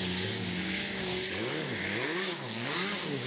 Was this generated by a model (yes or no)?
yes